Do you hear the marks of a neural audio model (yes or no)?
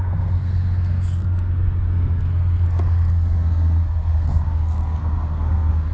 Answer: yes